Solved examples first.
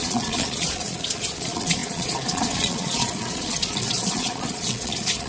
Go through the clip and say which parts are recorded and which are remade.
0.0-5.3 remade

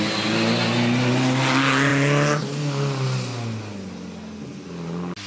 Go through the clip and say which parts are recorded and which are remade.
0.0-5.3 recorded

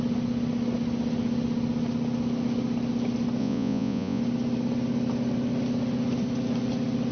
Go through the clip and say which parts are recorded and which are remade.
0.0-3.4 recorded; 3.4-4.2 remade; 4.2-7.1 recorded

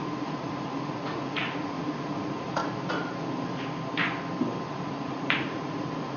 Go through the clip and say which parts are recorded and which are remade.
0.0-2.6 remade; 2.6-4.7 recorded; 4.7-6.2 remade

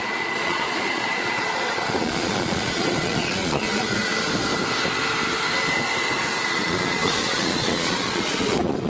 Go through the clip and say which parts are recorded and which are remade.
0.0-4.1 remade; 4.1-6.4 recorded; 6.4-8.9 remade

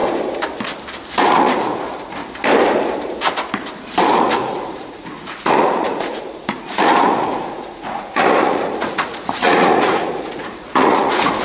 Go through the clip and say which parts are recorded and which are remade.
0.0-1.3 recorded; 1.3-2.2 remade; 2.2-4.1 recorded; 4.1-11.4 remade